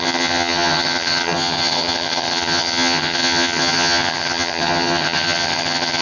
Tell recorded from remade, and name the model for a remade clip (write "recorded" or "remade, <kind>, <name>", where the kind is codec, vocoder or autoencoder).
remade, vocoder, HiFi-GAN